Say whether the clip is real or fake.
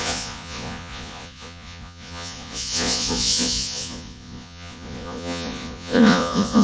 fake